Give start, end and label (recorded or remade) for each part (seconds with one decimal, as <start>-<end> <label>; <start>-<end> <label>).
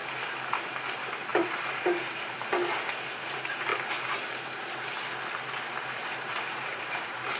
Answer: 0.0-0.6 recorded; 0.6-3.7 remade; 3.7-5.9 recorded; 5.9-7.4 remade